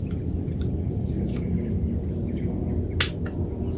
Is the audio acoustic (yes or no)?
yes